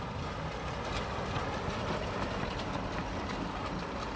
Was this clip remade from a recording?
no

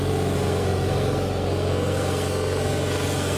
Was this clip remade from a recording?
yes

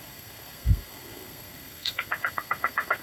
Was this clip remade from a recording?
yes